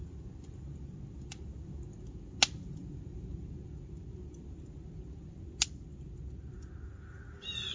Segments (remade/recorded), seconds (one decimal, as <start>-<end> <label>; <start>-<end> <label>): 0.0-7.7 recorded